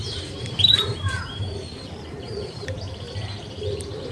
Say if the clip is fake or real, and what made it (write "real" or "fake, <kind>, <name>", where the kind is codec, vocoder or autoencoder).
fake, vocoder, BigVGAN v2